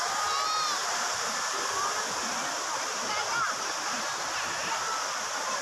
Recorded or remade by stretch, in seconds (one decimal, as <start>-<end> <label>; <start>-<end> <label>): 0.0-0.8 recorded; 0.8-1.6 remade; 1.6-5.6 recorded